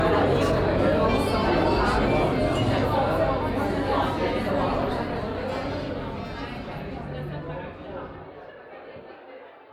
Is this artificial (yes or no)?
no